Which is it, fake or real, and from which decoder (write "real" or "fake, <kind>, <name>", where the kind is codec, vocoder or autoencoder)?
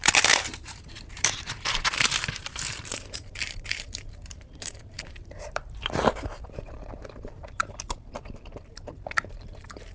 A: fake, vocoder, BigVGAN v2